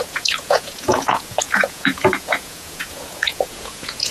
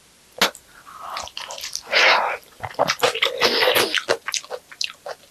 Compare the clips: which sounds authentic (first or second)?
second